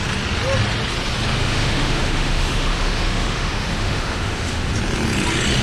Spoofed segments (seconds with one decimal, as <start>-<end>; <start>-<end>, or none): 1.3-4.7